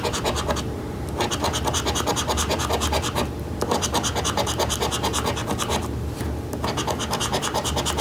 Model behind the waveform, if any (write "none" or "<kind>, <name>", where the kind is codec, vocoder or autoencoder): none